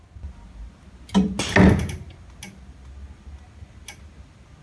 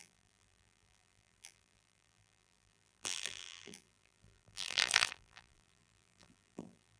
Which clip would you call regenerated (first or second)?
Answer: second